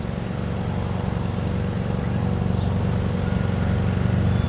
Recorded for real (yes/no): yes